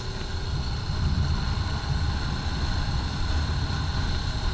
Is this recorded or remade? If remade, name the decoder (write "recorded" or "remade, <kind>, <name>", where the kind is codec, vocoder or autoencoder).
recorded